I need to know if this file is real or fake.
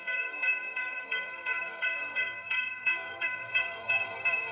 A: fake